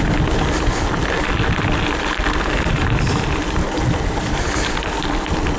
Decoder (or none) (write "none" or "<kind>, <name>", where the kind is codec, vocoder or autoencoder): none